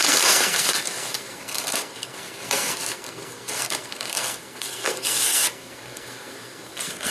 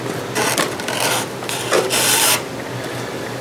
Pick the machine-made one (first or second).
first